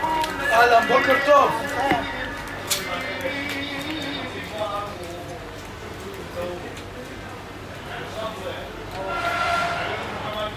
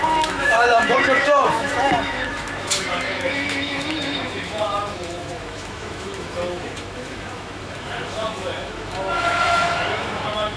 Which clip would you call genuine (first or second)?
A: first